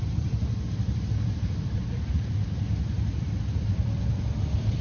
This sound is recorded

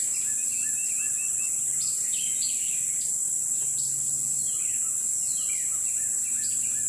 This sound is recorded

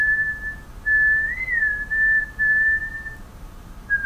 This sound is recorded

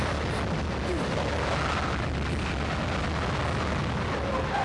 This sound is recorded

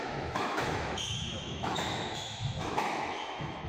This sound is remade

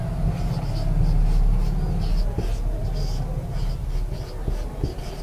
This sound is recorded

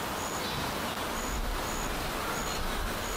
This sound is recorded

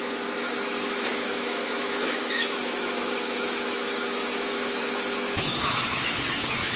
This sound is remade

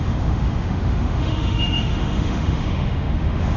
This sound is remade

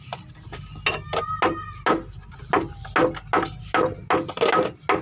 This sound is recorded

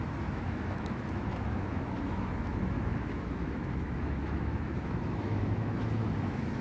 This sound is remade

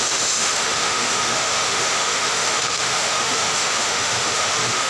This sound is remade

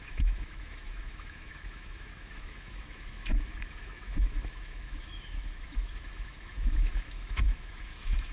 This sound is remade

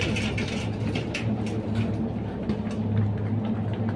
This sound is recorded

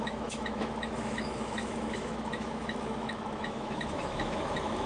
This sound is remade